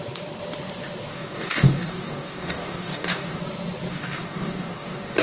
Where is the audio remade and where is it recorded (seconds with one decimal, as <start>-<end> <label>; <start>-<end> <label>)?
0.0-1.1 recorded; 1.1-3.4 remade; 3.4-3.9 recorded; 3.9-5.2 remade